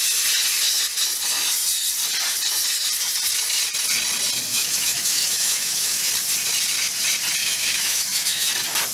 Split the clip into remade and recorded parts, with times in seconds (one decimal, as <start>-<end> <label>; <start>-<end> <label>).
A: 0.0-4.5 recorded; 4.5-6.1 remade; 6.1-7.4 recorded; 7.4-8.5 remade; 8.5-8.9 recorded